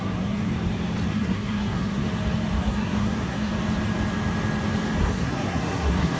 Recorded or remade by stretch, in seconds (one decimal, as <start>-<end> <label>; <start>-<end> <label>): 0.0-0.5 remade; 0.5-1.1 recorded; 1.1-2.0 remade; 2.0-2.6 recorded; 2.6-3.5 remade; 3.5-5.0 recorded; 5.0-6.2 remade